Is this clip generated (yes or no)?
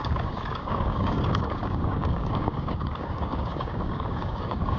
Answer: yes